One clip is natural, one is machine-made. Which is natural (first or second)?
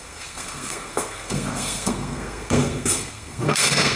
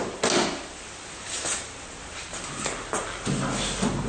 second